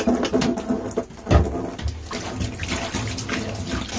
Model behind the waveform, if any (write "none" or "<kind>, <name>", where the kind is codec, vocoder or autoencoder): none